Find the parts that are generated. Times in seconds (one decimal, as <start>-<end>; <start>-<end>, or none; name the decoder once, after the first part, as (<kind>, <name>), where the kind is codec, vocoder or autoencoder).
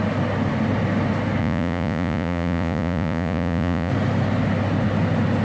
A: 1.4-3.9 (vocoder, Vocos)